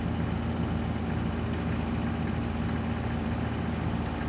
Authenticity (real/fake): real